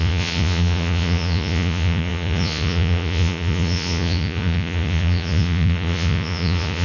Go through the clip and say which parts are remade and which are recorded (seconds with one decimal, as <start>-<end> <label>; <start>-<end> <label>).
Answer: 0.0-6.8 remade